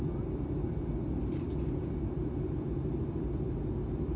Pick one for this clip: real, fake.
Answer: real